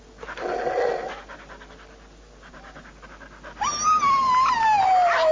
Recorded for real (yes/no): yes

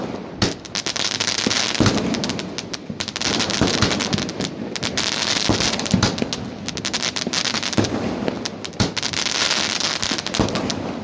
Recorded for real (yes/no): yes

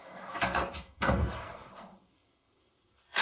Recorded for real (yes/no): no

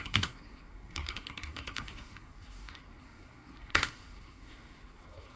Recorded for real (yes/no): no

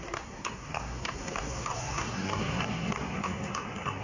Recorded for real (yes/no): no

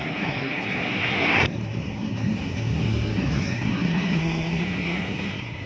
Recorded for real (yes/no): no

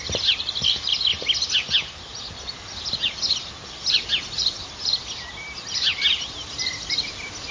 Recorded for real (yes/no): yes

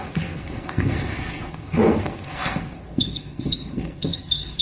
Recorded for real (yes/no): no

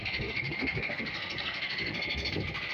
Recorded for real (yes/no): no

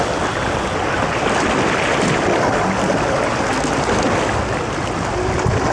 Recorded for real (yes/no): yes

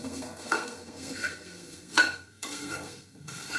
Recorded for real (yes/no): no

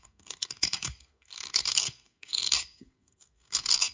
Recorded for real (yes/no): no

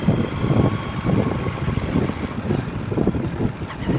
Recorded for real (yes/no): yes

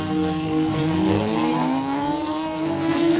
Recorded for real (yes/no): no